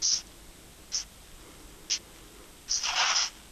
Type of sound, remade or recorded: recorded